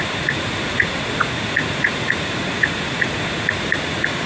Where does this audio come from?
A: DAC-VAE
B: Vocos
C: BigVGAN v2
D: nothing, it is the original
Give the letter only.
B